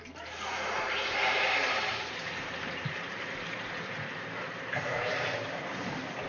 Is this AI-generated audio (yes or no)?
yes